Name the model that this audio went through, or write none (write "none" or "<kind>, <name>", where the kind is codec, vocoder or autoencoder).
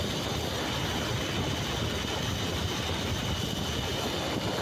none